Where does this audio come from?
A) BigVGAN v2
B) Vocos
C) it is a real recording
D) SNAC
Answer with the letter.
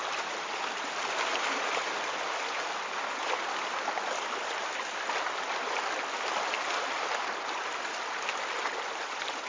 C